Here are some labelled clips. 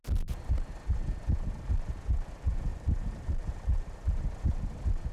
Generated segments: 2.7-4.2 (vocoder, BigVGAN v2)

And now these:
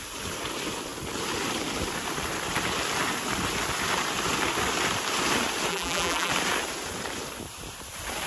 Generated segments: 5.7-6.3 (vocoder, BigVGAN v2)

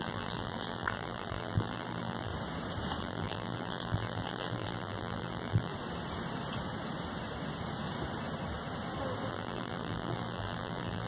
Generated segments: 0.0-2.3 (vocoder, BigVGAN v2); 3.0-5.7; 9.3-11.1

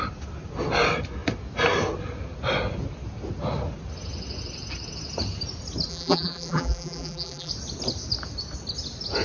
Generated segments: 5.9-7.5 (vocoder, BigVGAN v2)